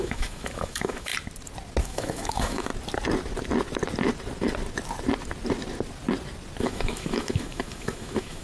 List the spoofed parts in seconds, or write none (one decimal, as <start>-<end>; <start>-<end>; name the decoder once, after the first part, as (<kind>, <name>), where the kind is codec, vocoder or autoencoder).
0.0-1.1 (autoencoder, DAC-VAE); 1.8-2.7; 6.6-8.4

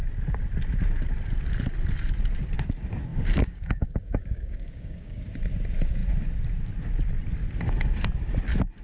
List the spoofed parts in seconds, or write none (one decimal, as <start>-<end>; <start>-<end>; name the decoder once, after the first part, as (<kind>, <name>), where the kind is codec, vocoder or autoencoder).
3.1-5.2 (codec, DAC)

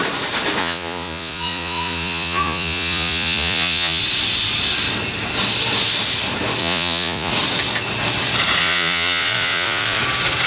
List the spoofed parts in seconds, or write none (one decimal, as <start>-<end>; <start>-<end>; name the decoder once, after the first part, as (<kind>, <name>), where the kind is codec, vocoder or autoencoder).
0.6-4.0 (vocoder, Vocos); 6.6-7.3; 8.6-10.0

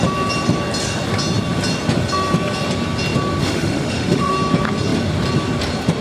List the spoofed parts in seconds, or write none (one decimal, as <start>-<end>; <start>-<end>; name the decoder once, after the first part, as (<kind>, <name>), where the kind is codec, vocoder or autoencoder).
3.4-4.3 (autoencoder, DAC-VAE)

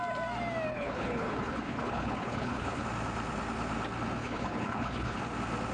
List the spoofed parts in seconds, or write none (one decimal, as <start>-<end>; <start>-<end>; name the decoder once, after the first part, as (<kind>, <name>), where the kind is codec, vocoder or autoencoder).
0.7-2.8 (codec, HILCodec); 4.2-5.2

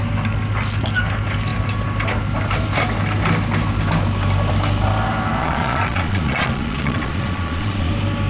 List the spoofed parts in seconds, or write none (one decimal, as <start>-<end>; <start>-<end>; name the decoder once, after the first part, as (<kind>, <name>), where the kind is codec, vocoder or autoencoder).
5.4-7.9 (vocoder, Vocos)

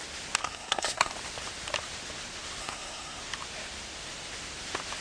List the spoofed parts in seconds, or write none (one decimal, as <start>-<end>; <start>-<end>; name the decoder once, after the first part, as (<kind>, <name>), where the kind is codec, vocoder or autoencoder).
0.4-1.1 (codec, SNAC); 2.6-3.2